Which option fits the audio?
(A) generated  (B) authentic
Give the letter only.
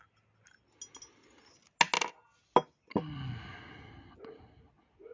B